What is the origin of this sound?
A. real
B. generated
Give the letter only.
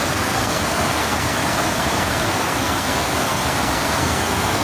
B